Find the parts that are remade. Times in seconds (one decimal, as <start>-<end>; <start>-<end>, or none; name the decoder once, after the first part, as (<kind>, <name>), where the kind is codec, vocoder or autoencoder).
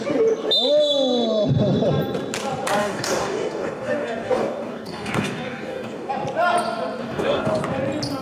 2.8-6.1 (codec, DAC); 7.0-7.6